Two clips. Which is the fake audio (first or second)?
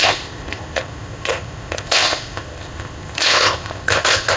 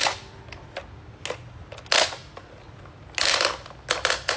first